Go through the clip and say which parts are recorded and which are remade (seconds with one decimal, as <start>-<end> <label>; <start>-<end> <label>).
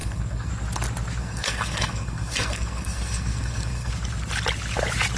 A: 0.0-0.5 remade; 0.5-1.2 recorded; 1.2-3.9 remade; 3.9-5.2 recorded